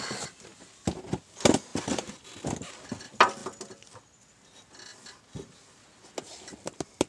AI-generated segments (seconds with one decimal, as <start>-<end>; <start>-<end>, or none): 1.7-2.4